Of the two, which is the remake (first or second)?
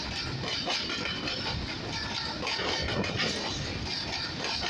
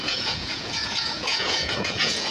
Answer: second